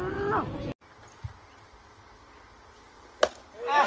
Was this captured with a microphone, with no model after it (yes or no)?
yes